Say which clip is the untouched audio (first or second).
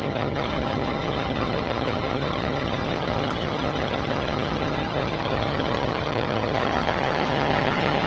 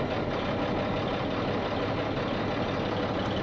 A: second